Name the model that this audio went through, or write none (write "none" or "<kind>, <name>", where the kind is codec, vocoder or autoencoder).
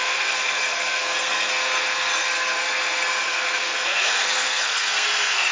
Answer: codec, SNAC